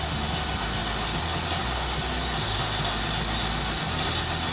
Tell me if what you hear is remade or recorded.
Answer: recorded